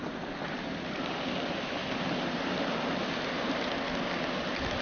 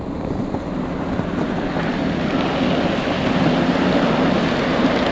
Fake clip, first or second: first